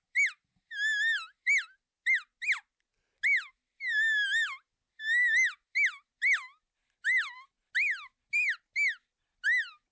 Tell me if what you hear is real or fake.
real